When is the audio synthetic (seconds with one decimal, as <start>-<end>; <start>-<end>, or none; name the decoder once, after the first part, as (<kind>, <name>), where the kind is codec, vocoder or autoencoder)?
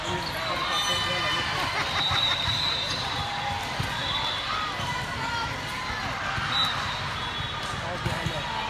1.8-2.5 (vocoder, BigVGAN v2); 3.2-4.4